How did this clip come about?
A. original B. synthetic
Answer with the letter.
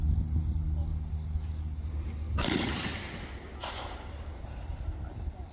A